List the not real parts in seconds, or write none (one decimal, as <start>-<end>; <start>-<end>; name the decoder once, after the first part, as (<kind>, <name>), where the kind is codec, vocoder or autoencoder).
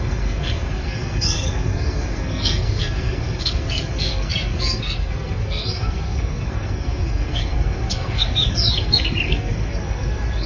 0.0-10.5 (codec, SNAC)